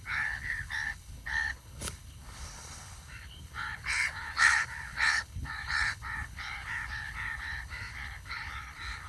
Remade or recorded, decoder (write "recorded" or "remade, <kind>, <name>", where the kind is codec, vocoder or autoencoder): remade, codec, HILCodec